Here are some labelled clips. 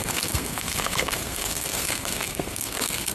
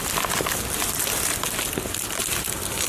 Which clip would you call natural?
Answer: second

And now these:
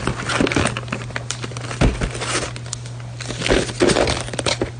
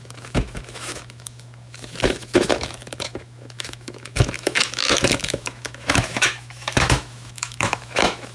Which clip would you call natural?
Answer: first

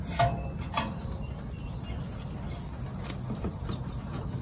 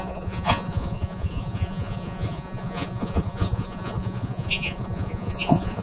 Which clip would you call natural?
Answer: first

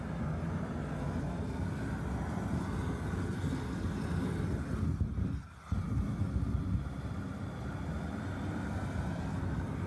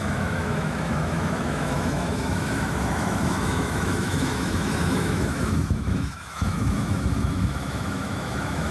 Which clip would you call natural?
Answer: first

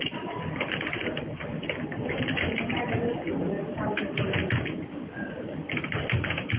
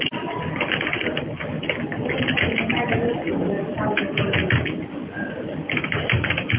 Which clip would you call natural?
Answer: second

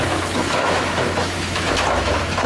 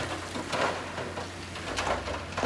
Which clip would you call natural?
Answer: second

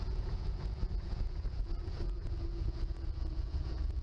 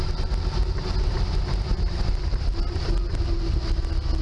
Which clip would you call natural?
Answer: second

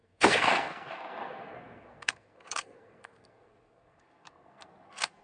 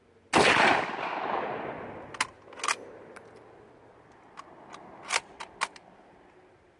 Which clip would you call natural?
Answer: second